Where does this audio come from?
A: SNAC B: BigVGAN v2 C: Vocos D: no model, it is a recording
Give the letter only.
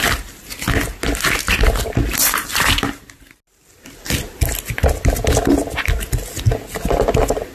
D